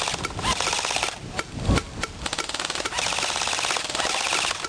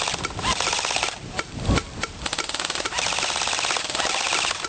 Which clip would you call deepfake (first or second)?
second